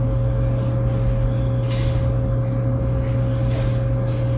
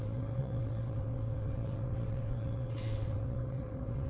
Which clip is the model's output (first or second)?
second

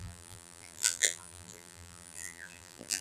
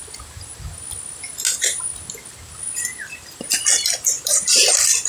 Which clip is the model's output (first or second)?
first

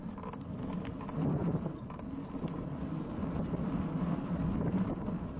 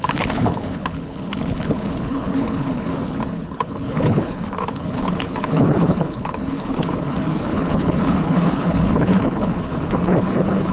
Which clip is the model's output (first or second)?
second